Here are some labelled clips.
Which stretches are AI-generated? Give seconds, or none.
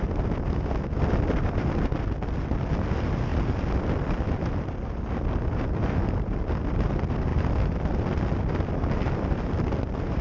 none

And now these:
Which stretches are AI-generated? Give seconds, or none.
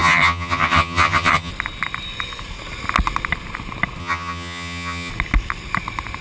0.0-1.5 (vocoder, HiFi-GAN); 4.0-5.1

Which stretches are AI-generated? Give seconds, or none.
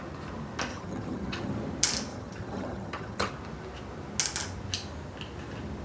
0.7-1.5 (vocoder, HiFi-GAN); 2.1-3.3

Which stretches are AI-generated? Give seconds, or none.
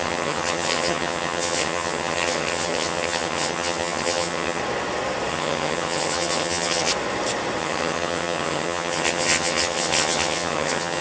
0.0-4.6 (vocoder, HiFi-GAN); 5.3-6.9; 7.6-11.0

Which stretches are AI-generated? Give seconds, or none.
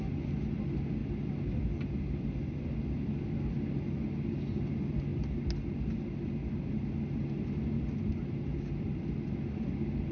none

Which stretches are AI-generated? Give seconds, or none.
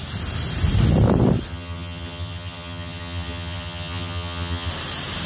1.5-4.7 (vocoder, HiFi-GAN)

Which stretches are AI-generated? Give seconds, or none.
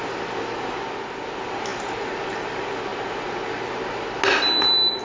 none